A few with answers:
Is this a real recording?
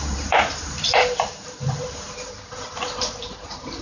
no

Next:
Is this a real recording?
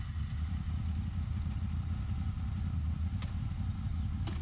yes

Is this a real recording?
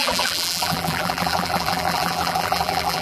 no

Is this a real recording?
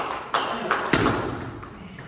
yes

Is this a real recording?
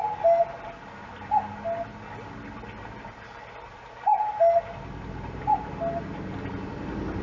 yes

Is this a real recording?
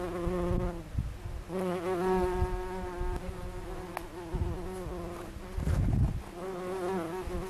yes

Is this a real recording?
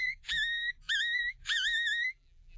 no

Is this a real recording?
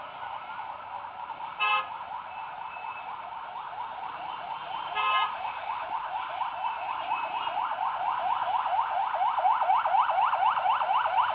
yes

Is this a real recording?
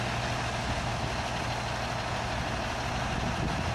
yes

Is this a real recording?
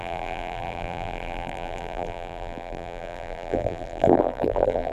no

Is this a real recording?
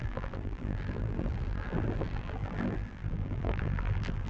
no